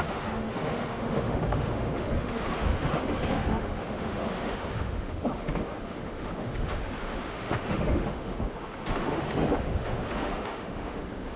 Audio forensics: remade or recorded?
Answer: remade